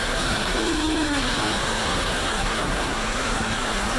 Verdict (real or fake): fake